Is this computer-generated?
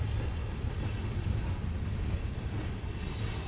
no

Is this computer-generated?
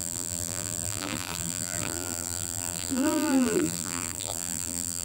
yes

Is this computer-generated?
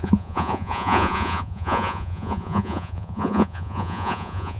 yes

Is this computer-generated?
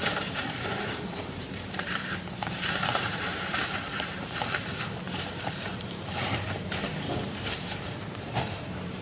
yes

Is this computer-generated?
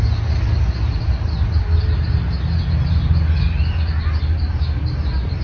no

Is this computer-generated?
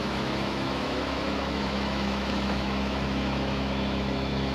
yes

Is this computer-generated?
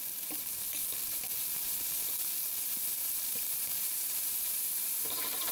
yes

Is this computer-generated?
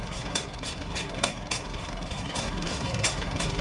yes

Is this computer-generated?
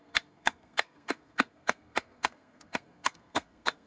yes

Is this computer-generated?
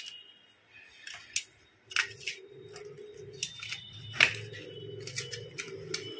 no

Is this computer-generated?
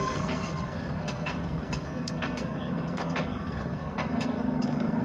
yes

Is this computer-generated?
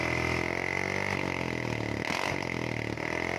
no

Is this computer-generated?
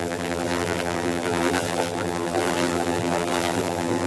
yes